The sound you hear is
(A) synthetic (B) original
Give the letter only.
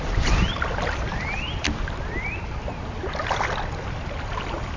B